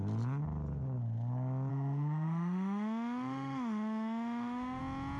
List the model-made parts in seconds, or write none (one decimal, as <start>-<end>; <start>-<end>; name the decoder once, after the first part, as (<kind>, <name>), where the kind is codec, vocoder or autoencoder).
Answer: 1.7-4.8 (autoencoder, DAC-VAE)